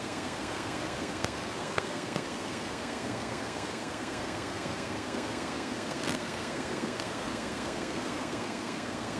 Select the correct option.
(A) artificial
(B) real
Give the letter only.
A